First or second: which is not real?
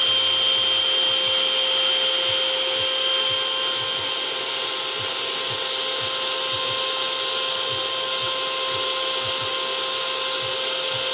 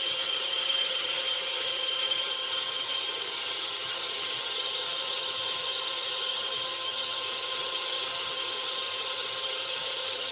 second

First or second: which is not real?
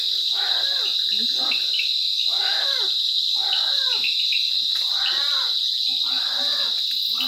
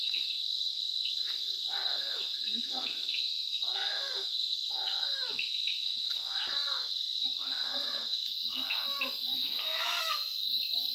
second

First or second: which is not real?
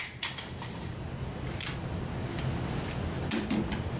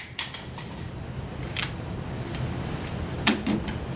second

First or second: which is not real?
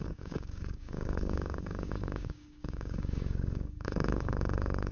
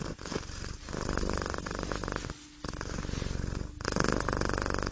first